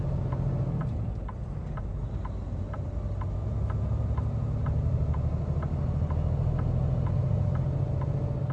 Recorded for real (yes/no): yes